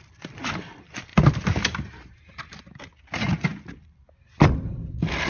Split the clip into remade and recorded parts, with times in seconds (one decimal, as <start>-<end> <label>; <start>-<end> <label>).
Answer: 0.0-1.1 recorded; 1.1-2.6 remade; 2.6-5.3 recorded